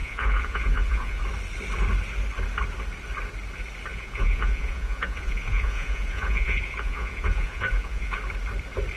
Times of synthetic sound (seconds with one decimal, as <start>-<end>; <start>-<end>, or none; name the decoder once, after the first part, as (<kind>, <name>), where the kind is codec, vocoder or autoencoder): 0.0-1.2 (vocoder, Vocos); 3.9-8.2